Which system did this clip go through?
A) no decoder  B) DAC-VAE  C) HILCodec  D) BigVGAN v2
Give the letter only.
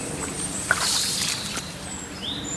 D